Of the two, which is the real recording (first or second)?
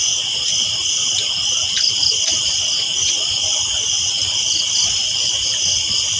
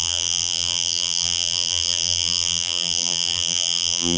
first